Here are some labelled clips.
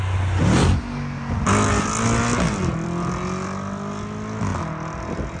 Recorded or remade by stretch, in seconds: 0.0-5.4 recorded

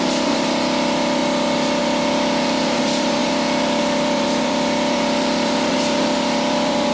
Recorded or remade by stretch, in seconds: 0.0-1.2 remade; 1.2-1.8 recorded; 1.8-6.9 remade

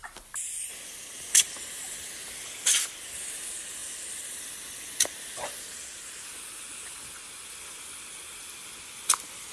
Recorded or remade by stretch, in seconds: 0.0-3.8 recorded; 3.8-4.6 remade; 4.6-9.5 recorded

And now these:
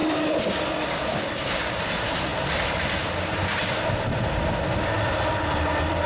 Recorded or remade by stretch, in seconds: 0.0-1.1 recorded; 1.1-1.9 remade; 1.9-6.1 recorded